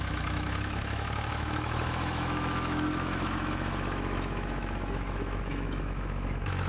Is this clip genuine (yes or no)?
no